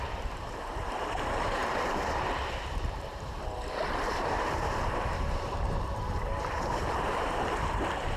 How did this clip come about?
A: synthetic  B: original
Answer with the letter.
A